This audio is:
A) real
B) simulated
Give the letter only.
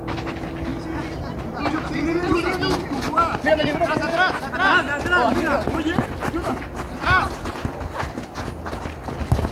A